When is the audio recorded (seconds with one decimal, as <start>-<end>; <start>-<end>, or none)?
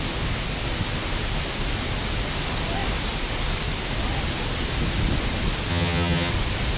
0.0-5.7; 6.3-6.8